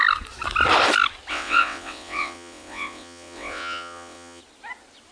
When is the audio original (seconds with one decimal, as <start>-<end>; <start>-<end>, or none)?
0.0-1.3; 4.4-5.1